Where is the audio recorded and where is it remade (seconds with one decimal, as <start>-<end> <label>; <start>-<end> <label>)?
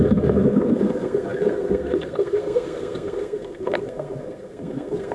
0.0-5.1 remade